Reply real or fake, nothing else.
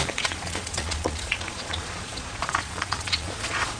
fake